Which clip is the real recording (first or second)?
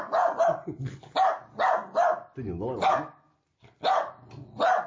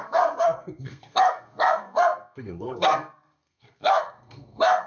first